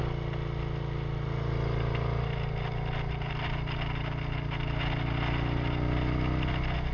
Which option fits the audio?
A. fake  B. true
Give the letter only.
B